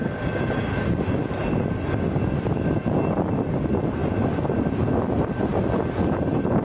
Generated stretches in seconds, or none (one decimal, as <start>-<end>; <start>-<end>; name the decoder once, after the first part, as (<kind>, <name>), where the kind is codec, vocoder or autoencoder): none